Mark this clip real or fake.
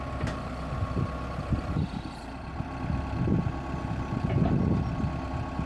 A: real